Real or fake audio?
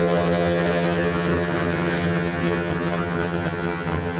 fake